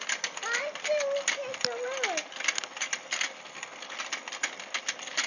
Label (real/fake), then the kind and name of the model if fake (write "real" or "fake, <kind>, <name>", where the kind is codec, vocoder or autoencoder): real